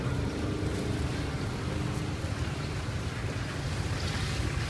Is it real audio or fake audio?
real